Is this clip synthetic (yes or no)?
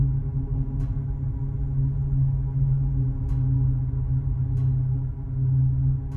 no